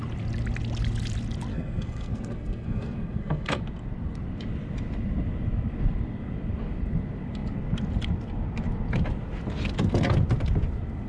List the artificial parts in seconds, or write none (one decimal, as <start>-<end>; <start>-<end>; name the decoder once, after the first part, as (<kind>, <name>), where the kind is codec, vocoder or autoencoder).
1.5-3.6 (codec, SNAC)